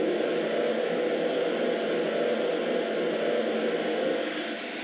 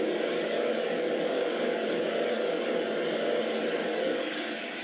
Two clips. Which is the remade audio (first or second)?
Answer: second